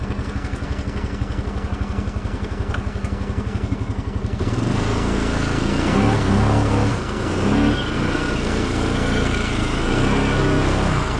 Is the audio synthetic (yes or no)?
yes